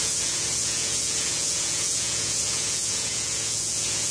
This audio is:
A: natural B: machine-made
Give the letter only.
B